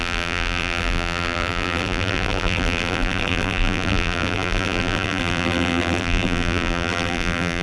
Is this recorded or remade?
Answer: remade